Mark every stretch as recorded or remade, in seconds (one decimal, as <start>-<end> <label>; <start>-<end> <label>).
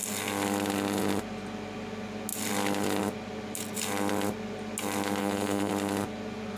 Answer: 0.0-5.2 recorded; 5.2-5.7 remade; 5.7-6.6 recorded